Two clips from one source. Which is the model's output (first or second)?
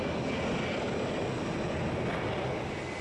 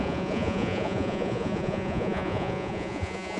second